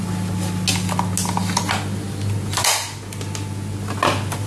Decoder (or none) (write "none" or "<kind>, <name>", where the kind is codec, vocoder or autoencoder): none